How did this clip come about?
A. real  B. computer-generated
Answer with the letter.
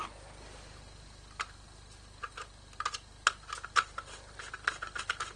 A